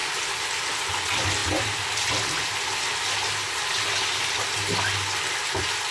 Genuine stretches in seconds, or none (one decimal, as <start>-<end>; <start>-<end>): 0.0-5.9